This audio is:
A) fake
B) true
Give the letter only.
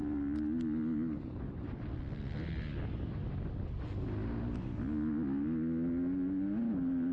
B